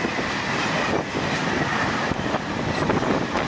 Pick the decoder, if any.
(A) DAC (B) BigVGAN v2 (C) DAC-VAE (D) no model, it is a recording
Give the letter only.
D